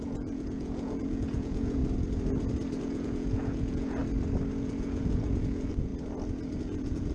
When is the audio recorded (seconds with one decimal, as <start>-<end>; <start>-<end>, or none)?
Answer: 1.8-2.8; 4.0-4.5; 5.9-6.6